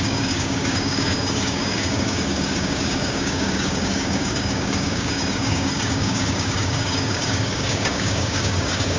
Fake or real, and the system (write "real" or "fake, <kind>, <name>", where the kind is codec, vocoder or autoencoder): fake, codec, DAC